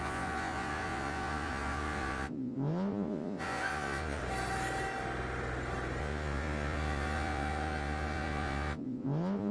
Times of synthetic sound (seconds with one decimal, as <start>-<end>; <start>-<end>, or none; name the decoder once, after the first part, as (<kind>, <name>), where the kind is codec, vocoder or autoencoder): 0.0-4.2 (vocoder, Vocos); 6.0-9.5

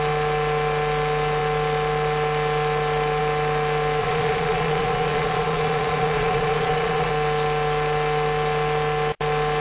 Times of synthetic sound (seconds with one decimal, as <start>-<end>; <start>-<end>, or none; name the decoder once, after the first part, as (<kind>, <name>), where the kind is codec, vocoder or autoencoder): 4.0-7.1 (vocoder, Vocos)

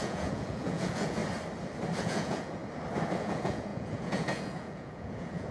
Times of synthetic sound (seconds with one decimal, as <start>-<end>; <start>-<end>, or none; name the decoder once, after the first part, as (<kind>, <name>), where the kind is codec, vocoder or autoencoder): 0.0-1.2 (vocoder, Vocos); 2.0-2.6; 3.2-5.5

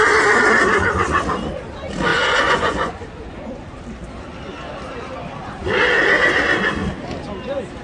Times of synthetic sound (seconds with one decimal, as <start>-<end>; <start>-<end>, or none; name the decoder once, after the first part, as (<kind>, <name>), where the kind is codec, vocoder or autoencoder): 2.1-3.8 (vocoder, Vocos)

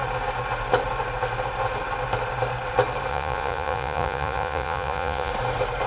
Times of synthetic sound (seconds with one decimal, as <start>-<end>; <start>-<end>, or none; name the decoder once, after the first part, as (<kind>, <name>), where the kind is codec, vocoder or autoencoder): 3.1-5.3 (vocoder, Vocos)

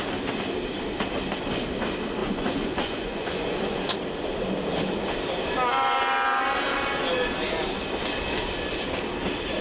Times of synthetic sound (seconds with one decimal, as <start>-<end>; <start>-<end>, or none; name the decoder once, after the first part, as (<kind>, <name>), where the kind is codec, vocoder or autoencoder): 2.2-3.9 (vocoder, Vocos)

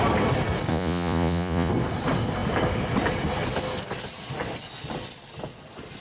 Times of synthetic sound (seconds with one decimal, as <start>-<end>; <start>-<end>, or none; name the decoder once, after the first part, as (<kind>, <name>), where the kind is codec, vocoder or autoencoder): 0.7-1.7 (vocoder, Vocos)

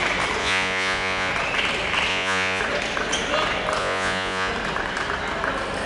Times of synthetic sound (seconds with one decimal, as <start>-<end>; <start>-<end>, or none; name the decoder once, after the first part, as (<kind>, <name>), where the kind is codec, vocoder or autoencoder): 0.4-1.3 (vocoder, Vocos); 2.1-2.6; 3.8-4.5